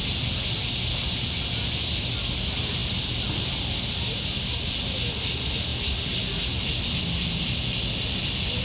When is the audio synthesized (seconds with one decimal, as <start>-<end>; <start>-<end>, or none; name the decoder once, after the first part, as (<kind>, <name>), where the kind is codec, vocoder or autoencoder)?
none